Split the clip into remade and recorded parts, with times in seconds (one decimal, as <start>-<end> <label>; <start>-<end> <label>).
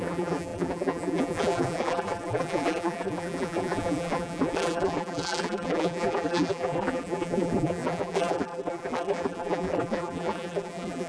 0.0-11.1 remade